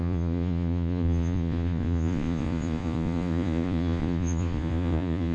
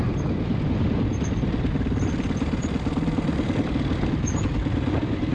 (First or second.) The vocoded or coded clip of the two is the first